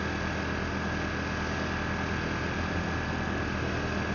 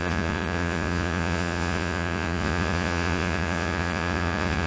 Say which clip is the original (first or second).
first